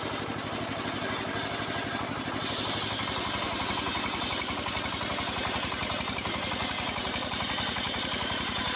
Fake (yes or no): no